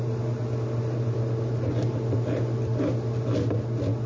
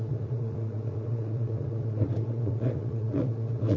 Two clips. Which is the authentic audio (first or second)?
first